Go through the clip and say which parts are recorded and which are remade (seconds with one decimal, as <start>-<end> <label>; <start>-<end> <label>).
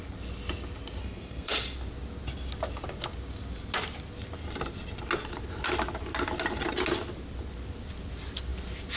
0.0-1.0 recorded; 1.0-1.5 remade; 1.5-9.0 recorded